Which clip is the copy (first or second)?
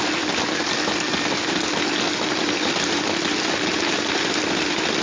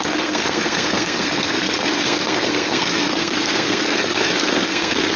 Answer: second